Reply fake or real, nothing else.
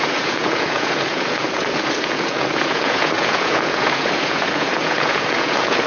fake